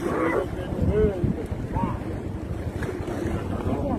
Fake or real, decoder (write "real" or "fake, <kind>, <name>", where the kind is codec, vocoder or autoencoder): real